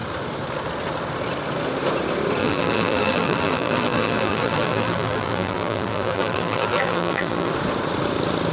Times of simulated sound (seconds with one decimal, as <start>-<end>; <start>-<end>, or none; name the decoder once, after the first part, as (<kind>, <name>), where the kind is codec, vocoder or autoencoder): 2.4-7.5 (vocoder, BigVGAN v2)